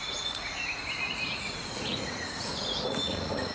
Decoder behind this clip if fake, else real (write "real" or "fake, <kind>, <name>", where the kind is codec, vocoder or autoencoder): fake, vocoder, Vocos